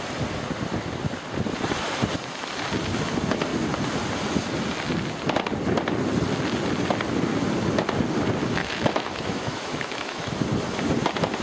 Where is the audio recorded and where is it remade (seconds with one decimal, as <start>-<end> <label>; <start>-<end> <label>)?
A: 0.0-8.6 recorded; 8.6-10.4 remade; 10.4-11.4 recorded